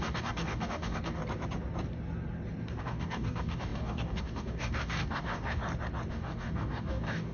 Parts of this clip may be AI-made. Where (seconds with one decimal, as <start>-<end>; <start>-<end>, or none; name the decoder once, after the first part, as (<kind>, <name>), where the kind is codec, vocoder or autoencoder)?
0.0-1.2 (codec, DAC); 2.8-5.6; 6.1-7.3